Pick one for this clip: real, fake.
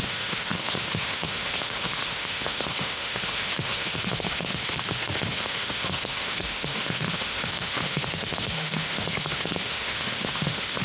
fake